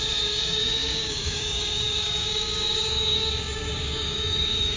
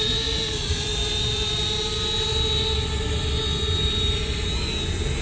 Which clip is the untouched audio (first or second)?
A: second